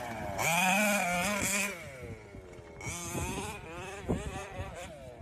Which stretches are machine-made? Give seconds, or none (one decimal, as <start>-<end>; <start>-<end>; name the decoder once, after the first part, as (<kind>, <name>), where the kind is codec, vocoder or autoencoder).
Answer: none